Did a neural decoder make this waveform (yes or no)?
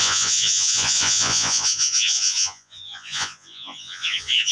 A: yes